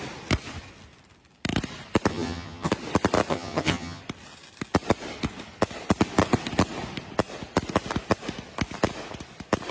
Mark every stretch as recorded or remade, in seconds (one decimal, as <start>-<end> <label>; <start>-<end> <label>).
0.0-2.1 recorded; 2.1-2.7 remade; 2.7-3.3 recorded; 3.3-4.0 remade; 4.0-9.7 recorded

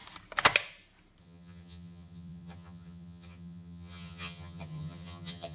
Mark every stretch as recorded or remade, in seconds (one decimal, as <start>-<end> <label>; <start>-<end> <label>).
0.0-1.2 recorded; 1.2-5.5 remade